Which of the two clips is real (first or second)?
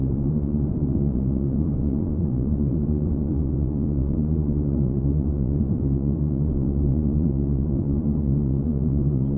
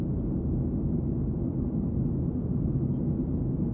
second